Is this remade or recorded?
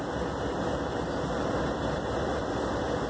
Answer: recorded